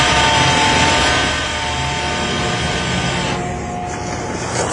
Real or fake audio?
real